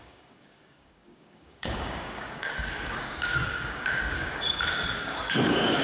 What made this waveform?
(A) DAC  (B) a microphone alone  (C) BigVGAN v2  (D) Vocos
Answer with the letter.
A